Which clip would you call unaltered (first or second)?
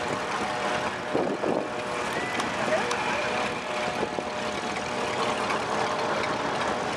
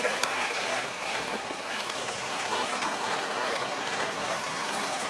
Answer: first